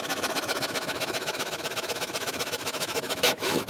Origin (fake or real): fake